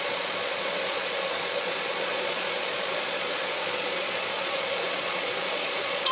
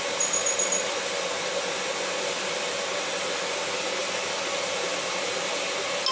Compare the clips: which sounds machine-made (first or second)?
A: first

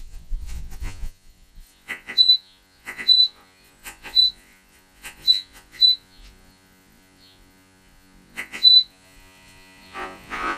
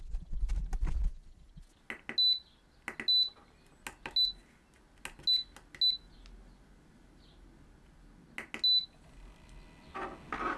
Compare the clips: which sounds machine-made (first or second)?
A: first